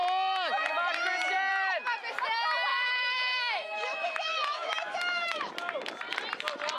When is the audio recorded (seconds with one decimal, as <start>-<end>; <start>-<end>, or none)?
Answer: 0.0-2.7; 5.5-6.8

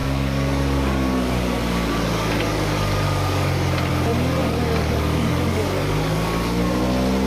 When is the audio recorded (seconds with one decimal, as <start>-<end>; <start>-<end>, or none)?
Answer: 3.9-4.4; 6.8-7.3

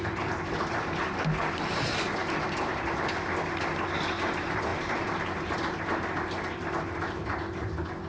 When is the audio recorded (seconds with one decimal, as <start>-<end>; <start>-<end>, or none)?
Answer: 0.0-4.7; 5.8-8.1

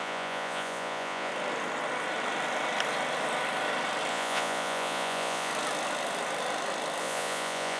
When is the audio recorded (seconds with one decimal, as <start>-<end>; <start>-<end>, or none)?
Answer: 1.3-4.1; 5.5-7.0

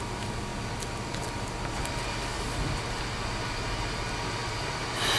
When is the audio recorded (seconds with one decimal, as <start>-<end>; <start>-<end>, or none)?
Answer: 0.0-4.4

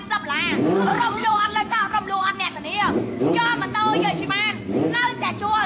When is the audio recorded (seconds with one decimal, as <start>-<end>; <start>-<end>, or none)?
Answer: 0.0-0.9; 2.3-5.7